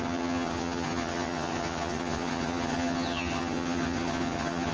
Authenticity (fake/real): fake